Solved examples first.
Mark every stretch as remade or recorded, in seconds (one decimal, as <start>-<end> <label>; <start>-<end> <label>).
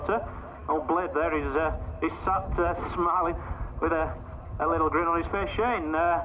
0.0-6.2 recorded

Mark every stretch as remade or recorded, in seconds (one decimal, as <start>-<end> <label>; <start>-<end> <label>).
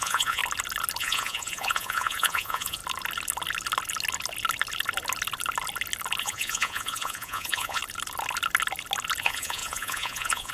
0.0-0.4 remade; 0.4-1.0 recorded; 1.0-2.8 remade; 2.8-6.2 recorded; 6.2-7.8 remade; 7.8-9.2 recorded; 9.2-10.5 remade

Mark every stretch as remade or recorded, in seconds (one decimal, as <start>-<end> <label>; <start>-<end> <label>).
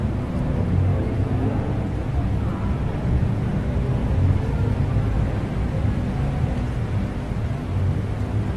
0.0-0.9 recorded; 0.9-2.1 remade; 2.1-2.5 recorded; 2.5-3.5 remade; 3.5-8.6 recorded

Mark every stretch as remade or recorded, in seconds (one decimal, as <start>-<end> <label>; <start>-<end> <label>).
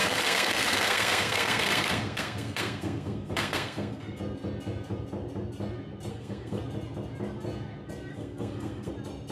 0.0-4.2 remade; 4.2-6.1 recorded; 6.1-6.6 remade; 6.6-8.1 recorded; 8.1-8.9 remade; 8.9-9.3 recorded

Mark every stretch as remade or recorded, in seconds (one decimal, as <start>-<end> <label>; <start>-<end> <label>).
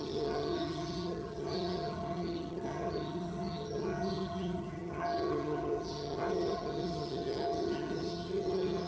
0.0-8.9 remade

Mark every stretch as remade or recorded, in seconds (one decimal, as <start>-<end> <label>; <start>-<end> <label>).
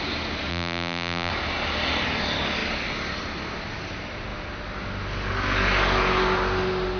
0.0-0.5 recorded; 0.5-1.3 remade; 1.3-7.0 recorded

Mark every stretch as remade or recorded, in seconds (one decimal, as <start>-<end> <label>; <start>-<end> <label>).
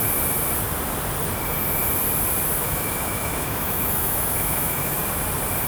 0.0-2.6 recorded; 2.6-5.0 remade; 5.0-5.7 recorded